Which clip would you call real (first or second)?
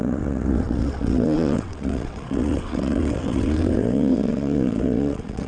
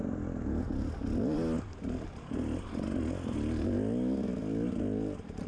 second